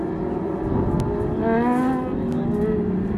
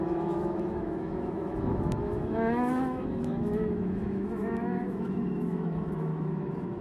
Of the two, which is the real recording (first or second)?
first